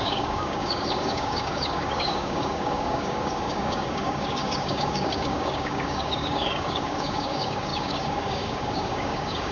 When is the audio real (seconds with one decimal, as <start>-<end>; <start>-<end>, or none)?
none